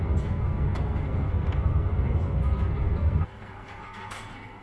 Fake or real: fake